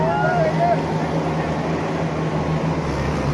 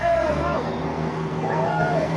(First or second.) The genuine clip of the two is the first